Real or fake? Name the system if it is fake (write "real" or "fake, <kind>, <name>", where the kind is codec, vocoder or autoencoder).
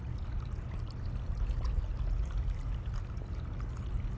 real